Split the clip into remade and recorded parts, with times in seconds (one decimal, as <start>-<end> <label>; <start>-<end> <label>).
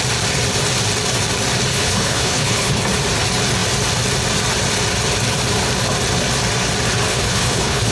0.0-1.7 recorded; 1.7-2.8 remade; 2.8-7.1 recorded; 7.1-7.9 remade